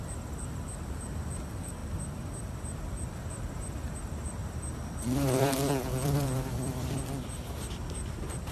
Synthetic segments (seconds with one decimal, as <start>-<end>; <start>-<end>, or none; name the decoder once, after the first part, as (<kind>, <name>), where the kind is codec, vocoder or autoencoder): 1.8-4.0 (vocoder, BigVGAN v2); 4.4-7.0